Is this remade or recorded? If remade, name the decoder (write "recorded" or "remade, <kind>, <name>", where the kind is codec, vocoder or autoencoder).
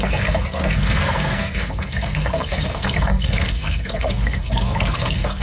remade, codec, SNAC